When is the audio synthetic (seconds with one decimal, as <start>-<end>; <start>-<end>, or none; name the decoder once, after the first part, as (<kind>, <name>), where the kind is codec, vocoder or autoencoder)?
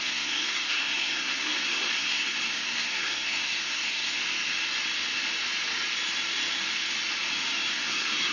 0.0-4.2 (codec, SNAC); 7.7-8.3